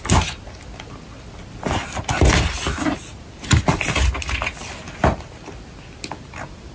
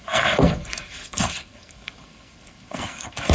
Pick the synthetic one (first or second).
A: second